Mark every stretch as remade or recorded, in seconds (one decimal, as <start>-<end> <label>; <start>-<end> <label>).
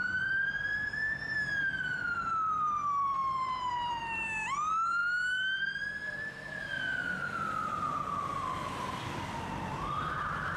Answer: 0.0-5.0 remade; 5.0-5.8 recorded; 5.8-10.6 remade